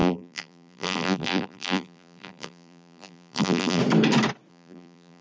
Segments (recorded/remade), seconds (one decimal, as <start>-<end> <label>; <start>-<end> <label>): 0.0-3.8 remade; 3.8-4.5 recorded; 4.5-5.2 remade